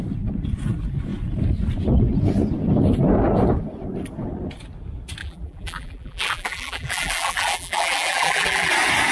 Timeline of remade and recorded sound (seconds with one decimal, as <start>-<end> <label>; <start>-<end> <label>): 0.0-5.2 recorded; 5.2-8.7 remade; 8.7-9.1 recorded